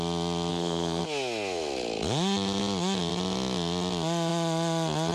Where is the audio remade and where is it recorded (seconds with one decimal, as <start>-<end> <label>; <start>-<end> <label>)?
0.0-0.5 recorded; 0.5-1.0 remade; 1.0-5.1 recorded